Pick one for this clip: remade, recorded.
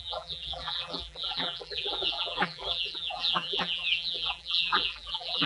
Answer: remade